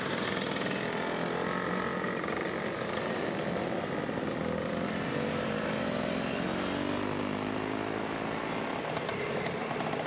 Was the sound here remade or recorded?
recorded